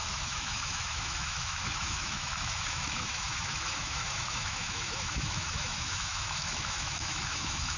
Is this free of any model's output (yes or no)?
no